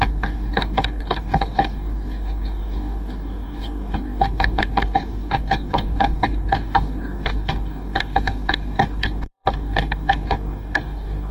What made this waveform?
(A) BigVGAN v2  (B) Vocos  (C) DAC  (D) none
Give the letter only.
C